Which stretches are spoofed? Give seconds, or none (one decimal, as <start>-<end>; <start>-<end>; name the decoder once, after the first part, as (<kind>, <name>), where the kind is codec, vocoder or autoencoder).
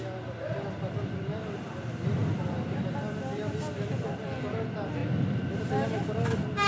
none